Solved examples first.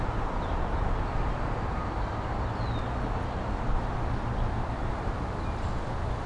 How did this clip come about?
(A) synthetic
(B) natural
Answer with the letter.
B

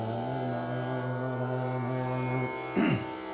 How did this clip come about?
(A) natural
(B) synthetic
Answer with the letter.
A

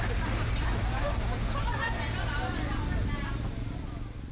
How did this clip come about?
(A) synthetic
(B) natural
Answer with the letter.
B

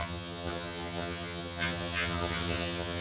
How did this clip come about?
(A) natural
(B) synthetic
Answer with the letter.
B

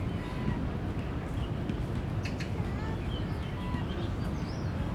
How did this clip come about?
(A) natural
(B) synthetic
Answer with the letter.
A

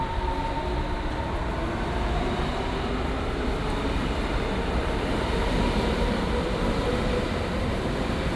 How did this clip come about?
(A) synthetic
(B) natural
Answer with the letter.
B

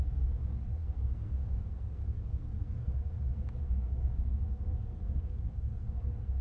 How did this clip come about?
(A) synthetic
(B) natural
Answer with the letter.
A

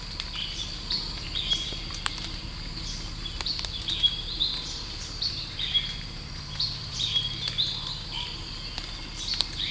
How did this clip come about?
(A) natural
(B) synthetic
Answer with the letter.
A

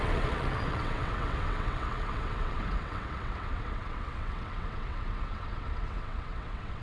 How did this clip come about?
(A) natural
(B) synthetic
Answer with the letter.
B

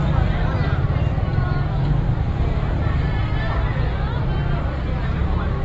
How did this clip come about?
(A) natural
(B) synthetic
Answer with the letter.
A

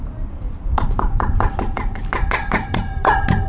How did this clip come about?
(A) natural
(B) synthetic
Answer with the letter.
B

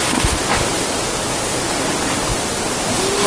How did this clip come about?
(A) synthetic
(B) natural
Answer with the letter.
B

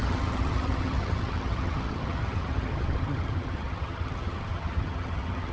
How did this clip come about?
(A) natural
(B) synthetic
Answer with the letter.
B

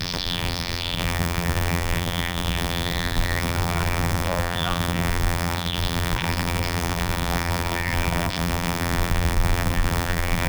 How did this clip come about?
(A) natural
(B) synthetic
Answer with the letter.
B